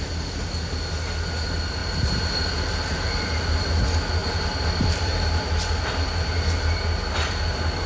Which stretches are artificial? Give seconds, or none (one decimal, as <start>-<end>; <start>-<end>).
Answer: 1.8-2.4; 4.2-5.1